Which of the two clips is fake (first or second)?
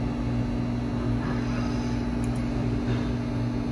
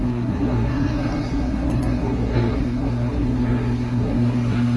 second